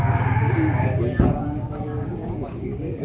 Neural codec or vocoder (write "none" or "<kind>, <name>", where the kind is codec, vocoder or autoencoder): codec, DAC